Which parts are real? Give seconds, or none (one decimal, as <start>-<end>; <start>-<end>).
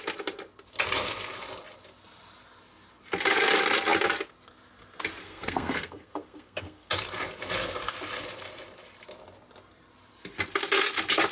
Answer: 0.0-5.2; 6.9-11.3